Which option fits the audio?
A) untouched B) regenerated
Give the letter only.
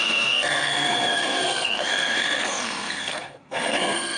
B